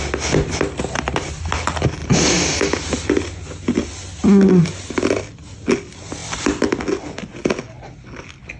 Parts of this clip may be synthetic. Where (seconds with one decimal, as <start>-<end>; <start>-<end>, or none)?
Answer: 6.2-6.8

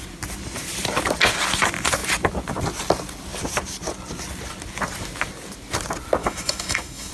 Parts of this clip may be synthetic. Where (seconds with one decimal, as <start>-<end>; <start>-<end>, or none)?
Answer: 6.2-7.1

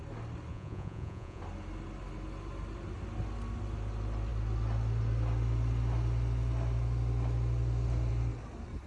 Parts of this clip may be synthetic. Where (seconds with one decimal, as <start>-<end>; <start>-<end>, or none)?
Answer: 0.5-1.4

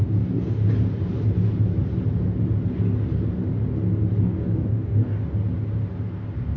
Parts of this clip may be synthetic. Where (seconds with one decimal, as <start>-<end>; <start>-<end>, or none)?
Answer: 0.0-0.6; 4.2-5.2

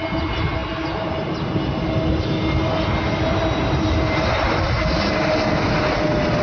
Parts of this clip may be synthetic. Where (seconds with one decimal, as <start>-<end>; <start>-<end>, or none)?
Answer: none

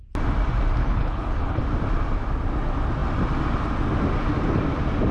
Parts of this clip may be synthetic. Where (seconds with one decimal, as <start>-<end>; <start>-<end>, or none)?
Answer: 0.8-1.6

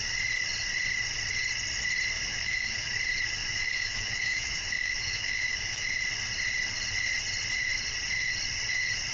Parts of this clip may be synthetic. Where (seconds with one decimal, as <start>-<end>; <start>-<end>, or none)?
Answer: 2.3-3.0; 3.4-6.0